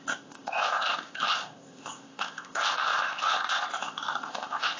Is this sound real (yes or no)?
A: no